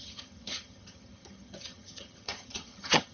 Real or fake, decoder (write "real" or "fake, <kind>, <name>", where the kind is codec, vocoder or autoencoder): fake, vocoder, HiFi-GAN